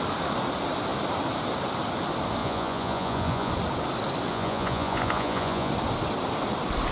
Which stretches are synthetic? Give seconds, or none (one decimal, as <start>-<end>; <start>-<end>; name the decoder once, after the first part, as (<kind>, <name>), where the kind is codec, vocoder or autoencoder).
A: 2.4-3.5 (vocoder, Vocos); 4.3-5.7